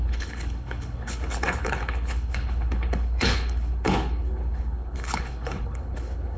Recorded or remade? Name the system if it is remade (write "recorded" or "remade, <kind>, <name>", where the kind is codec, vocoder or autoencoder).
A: remade, codec, HILCodec